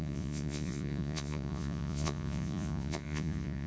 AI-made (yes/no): yes